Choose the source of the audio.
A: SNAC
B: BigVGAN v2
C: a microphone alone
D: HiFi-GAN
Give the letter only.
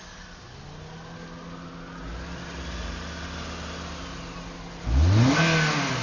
C